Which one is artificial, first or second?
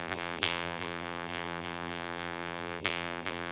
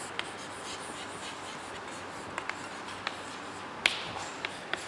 first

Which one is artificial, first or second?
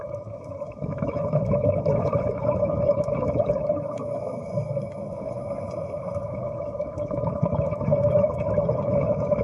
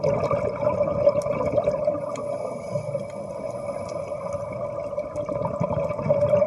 first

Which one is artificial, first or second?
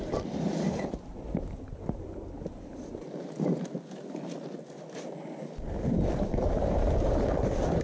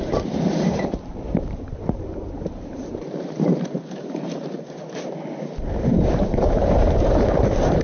second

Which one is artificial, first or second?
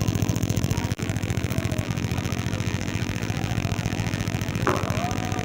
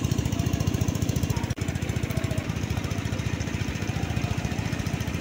first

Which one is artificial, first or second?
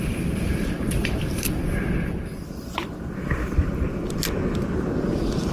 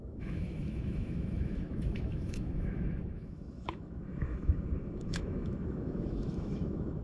second